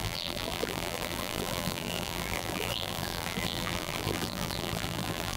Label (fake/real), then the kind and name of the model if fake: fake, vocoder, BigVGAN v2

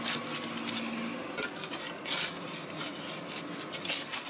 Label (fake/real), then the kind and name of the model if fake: real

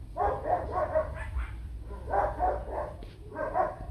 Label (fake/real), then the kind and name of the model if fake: fake, vocoder, BigVGAN v2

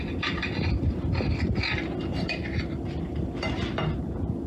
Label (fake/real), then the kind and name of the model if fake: real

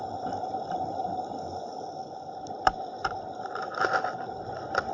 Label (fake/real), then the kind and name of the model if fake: fake, vocoder, BigVGAN v2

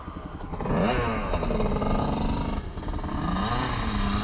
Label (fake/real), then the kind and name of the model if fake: real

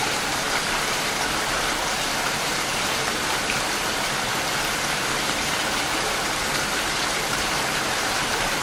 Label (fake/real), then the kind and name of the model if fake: fake, vocoder, BigVGAN v2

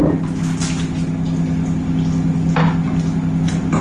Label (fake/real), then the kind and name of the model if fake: real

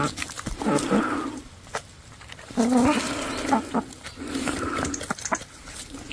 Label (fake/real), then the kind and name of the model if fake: real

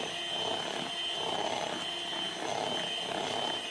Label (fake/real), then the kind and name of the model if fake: real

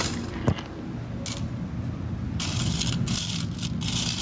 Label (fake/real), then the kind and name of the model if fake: real